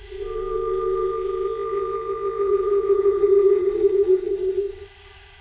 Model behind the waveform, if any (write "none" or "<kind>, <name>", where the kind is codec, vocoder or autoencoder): codec, ZipCodec